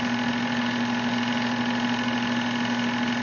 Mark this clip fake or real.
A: real